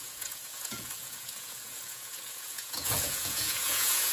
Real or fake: fake